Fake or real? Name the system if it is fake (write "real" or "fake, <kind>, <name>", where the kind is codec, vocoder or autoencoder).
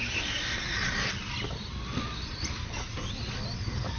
real